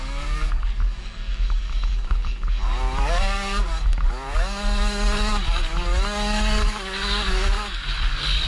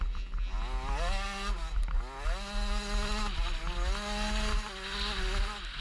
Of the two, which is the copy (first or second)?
first